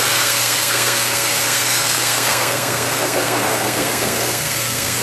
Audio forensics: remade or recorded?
remade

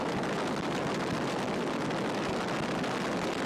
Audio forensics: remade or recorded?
recorded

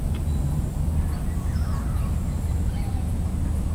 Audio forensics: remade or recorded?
recorded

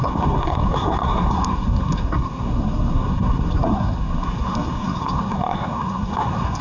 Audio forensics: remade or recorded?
remade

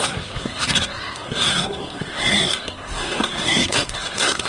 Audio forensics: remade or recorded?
remade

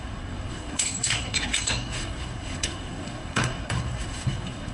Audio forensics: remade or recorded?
remade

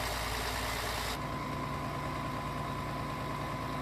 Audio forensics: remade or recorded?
recorded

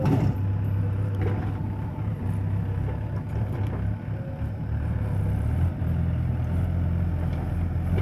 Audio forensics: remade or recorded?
recorded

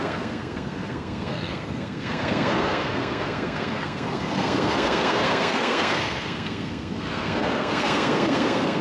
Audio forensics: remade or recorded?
remade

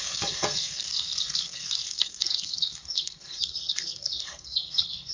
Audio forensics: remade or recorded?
remade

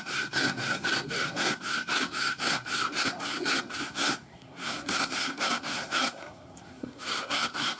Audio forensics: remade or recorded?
remade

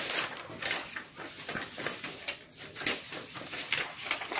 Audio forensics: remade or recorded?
recorded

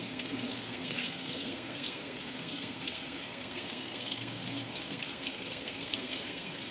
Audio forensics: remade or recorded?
remade